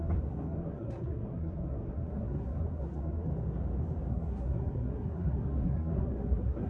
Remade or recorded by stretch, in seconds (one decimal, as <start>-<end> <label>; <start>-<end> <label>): 0.0-3.3 remade; 3.3-4.1 recorded; 4.1-6.7 remade